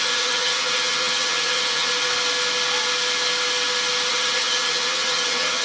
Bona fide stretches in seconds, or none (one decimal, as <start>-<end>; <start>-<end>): 1.9-4.1